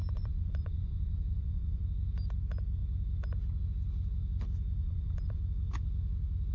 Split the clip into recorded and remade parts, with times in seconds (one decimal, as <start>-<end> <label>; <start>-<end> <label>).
0.0-1.8 remade; 1.8-4.8 recorded; 4.8-5.4 remade; 5.4-6.5 recorded